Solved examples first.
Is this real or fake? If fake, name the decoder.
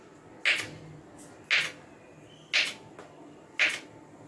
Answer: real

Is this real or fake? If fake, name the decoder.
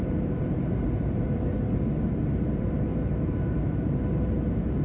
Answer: fake, vocoder, BigVGAN v2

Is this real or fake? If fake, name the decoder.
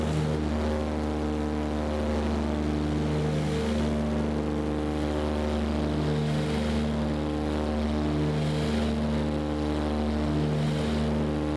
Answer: real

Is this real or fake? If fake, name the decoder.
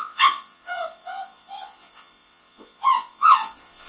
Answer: fake, vocoder, WaveNeXt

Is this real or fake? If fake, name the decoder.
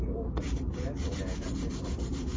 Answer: real